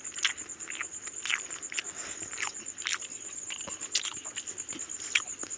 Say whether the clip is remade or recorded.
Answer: recorded